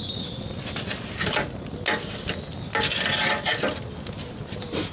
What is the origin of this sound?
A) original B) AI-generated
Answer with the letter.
A